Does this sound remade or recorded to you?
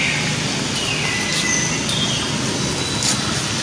recorded